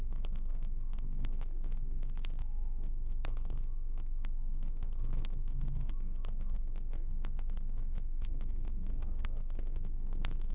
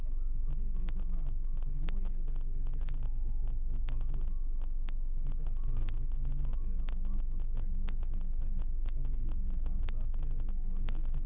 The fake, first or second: first